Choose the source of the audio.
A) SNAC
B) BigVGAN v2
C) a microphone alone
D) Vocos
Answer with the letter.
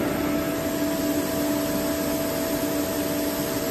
C